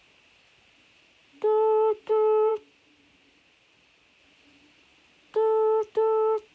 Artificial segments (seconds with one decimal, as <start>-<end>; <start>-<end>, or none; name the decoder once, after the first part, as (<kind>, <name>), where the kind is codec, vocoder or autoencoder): none